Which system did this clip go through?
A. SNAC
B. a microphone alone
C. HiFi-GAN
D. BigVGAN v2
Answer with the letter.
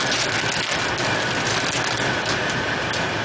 B